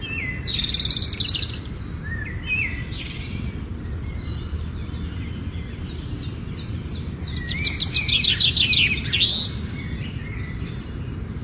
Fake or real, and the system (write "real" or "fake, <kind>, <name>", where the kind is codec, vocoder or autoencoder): real